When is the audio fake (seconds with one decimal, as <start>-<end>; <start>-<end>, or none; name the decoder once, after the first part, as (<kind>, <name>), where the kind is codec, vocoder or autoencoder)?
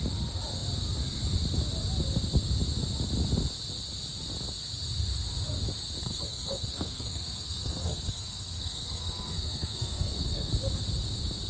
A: 6.0-10.5 (codec, SNAC)